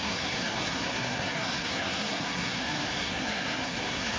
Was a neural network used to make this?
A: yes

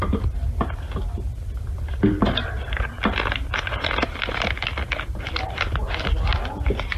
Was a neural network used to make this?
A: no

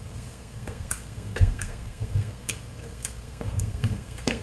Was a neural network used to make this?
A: yes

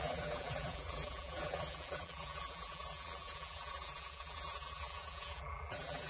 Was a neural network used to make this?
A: yes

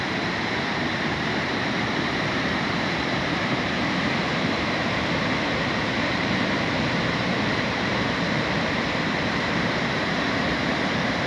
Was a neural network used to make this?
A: yes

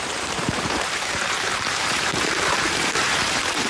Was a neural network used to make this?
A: yes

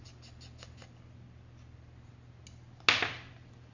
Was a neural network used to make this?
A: no